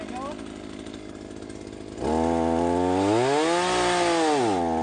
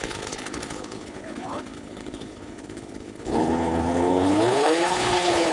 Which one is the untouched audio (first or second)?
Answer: first